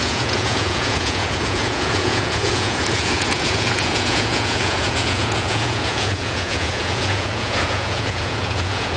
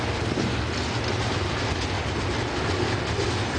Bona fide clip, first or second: second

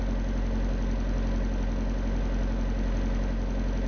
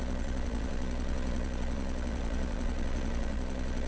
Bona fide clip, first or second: first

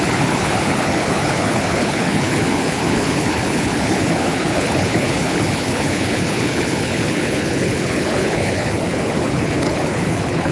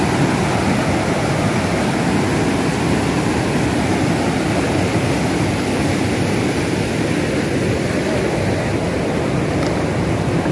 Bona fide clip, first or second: second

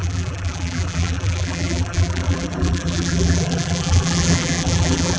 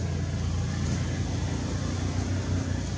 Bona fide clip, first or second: second